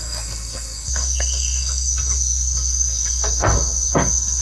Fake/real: fake